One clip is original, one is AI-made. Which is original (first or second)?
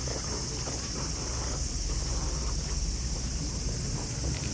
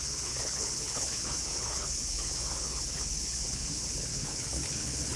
first